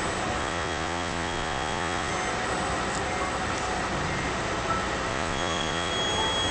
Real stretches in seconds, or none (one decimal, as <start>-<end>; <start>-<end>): 0.0-0.4; 2.1-5.1; 5.9-6.5